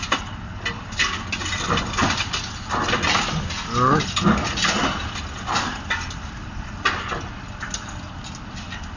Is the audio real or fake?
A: real